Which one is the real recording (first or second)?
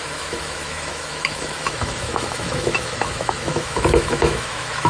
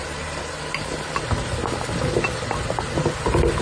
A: second